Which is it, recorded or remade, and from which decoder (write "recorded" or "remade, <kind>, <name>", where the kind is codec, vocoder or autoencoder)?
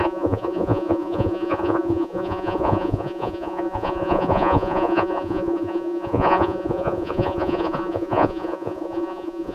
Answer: remade, vocoder, Vocos